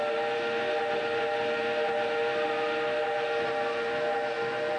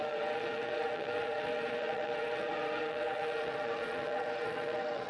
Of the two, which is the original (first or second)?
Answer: first